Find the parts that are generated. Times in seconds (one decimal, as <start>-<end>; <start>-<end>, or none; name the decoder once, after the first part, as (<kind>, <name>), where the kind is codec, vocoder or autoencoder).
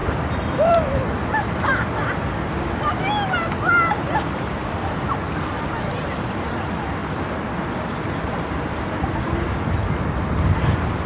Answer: 0.0-1.0 (vocoder, BigVGAN v2); 7.0-11.1